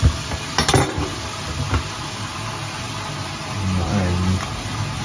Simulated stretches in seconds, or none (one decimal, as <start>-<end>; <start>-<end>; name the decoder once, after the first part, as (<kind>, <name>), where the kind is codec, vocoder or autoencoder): none